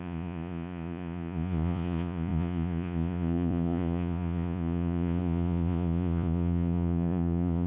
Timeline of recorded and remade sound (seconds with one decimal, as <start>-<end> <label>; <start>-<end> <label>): 0.0-7.7 remade